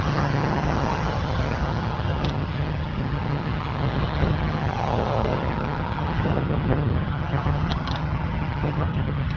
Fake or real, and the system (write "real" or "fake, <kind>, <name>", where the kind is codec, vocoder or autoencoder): fake, vocoder, HiFi-GAN